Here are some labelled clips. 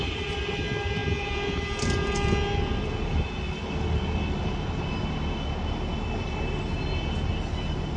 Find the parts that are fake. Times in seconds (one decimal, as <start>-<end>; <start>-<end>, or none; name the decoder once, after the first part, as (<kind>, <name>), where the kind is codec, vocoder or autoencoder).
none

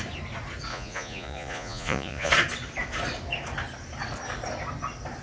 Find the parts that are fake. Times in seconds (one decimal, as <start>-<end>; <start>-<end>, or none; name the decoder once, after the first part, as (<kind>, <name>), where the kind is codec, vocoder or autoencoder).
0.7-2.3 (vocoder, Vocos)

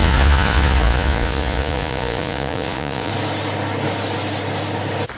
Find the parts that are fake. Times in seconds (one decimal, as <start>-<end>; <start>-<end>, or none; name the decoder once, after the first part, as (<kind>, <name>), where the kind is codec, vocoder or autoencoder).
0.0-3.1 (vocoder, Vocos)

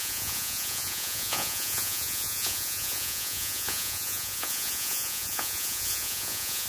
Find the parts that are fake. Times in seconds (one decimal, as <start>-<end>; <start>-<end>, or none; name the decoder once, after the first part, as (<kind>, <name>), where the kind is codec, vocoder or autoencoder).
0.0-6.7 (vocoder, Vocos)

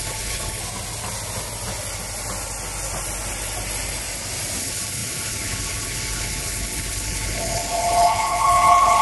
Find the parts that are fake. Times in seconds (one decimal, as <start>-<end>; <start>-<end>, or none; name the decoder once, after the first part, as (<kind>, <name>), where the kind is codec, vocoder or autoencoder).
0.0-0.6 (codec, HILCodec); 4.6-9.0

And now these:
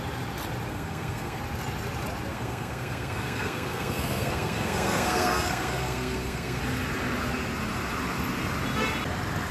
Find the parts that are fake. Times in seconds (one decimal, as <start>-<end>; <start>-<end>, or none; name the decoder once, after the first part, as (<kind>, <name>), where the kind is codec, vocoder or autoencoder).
0.7-1.4 (codec, SNAC); 2.3-6.6

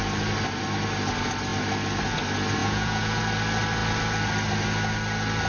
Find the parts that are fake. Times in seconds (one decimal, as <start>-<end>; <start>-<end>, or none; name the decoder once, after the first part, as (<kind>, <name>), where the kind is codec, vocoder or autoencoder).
2.6-3.2 (vocoder, Vocos)

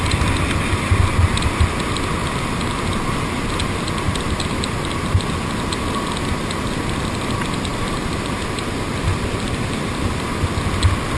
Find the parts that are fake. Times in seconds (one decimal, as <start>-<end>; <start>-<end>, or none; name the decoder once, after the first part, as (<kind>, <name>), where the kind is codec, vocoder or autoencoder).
none